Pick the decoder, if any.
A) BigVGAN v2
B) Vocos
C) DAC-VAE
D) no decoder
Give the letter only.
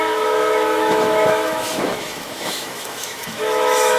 C